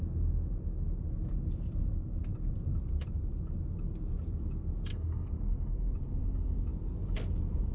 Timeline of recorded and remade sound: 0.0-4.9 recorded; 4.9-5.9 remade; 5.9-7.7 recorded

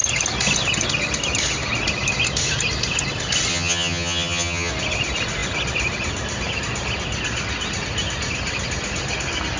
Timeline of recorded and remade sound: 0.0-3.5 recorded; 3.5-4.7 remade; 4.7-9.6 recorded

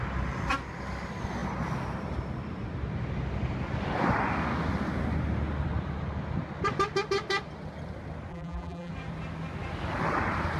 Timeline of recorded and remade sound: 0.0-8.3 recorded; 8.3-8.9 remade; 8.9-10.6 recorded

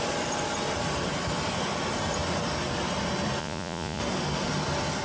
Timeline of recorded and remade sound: 0.0-3.4 recorded; 3.4-4.0 remade; 4.0-5.0 recorded